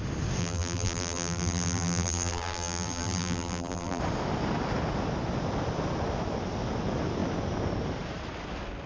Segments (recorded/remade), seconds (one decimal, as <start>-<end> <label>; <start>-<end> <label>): 0.0-0.4 recorded; 0.4-4.0 remade; 4.0-8.9 recorded